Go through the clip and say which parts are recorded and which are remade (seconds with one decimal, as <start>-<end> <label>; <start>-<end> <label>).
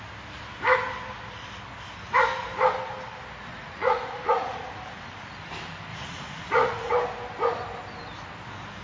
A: 0.0-3.5 recorded; 3.5-4.7 remade; 4.7-5.9 recorded; 5.9-6.9 remade; 6.9-8.8 recorded